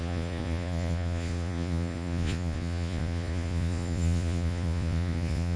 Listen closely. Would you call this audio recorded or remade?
remade